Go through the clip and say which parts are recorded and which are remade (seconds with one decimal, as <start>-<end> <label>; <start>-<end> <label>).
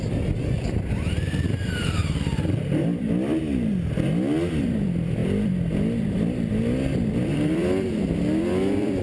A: 0.0-3.7 remade; 3.7-4.6 recorded; 4.6-9.0 remade